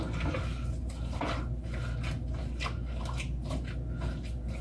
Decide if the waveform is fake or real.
real